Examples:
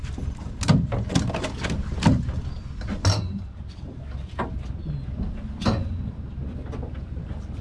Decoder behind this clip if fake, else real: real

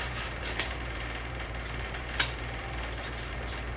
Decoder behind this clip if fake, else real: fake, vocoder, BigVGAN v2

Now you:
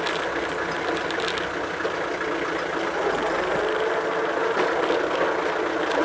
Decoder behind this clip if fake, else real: real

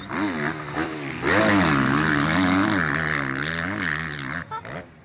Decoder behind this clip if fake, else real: real